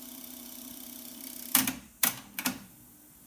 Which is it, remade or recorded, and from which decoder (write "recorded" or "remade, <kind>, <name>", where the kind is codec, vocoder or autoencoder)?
remade, vocoder, BigVGAN v2